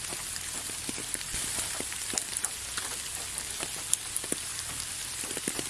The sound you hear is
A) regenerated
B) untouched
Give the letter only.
B